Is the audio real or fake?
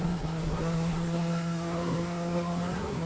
fake